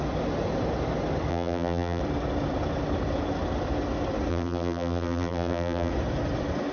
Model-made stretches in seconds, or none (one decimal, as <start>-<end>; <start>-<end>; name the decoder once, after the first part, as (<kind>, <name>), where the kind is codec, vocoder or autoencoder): 1.3-2.0 (vocoder, BigVGAN v2); 4.3-5.9